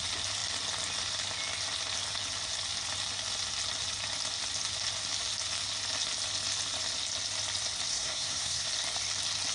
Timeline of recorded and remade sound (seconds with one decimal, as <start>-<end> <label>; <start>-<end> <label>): 0.0-7.9 recorded; 7.9-8.7 remade; 8.7-9.5 recorded